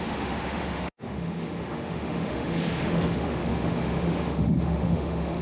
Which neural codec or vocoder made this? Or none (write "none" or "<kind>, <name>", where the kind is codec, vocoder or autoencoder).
autoencoder, DAC-VAE